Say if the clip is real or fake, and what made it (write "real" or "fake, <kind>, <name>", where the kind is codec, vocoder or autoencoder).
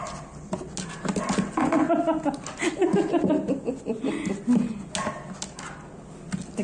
real